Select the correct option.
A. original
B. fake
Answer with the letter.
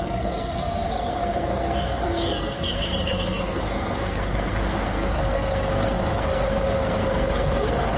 B